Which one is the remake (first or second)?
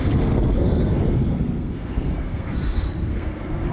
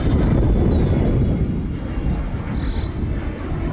first